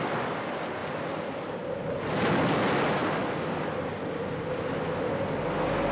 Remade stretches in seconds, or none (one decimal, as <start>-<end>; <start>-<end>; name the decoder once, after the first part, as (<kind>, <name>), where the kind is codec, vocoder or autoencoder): none